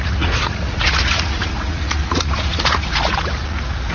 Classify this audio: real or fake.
fake